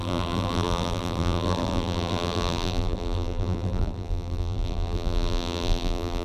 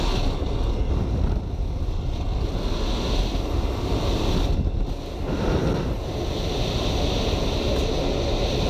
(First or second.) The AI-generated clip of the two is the first